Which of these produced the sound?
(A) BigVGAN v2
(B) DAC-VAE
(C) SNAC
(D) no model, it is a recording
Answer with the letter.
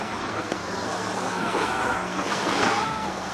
C